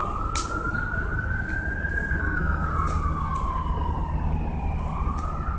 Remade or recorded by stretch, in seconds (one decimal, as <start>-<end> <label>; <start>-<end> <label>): 0.0-2.2 recorded; 2.2-2.7 remade; 2.7-5.6 recorded